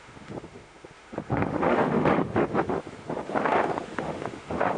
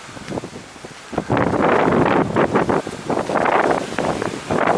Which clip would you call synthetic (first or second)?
first